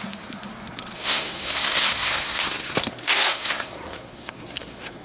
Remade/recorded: remade